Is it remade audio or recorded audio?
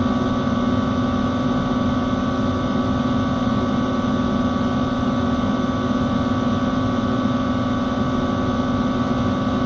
recorded